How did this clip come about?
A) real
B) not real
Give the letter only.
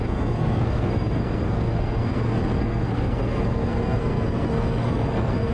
B